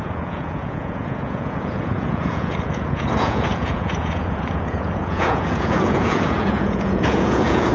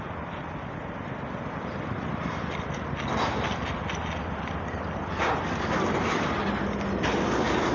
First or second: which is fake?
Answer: first